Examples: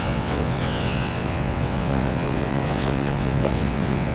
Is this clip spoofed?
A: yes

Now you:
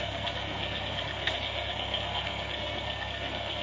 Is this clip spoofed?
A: yes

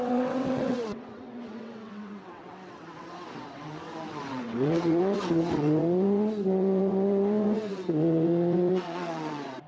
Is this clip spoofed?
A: yes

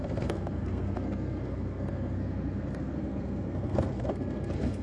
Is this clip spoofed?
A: yes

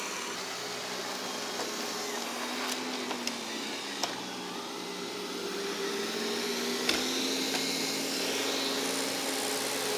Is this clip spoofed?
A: no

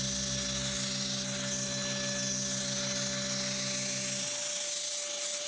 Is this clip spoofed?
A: no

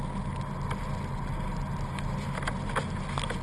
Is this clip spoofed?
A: no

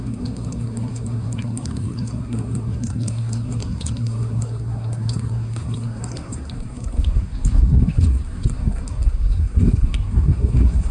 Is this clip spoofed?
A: yes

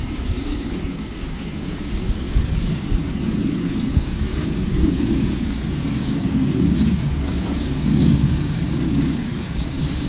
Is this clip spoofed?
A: yes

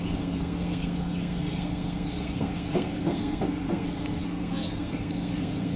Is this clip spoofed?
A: yes